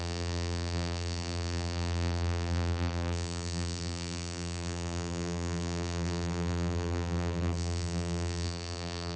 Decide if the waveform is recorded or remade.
remade